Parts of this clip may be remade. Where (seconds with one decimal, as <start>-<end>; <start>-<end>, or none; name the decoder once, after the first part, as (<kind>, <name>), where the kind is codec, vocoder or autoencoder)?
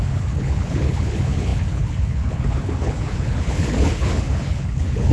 0.0-5.1 (codec, HILCodec)